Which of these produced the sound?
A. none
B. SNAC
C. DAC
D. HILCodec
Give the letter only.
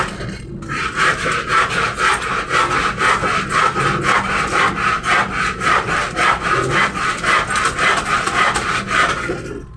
A